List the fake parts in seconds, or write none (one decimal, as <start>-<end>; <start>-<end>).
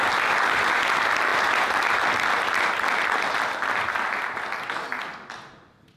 none